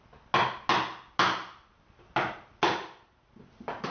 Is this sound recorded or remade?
recorded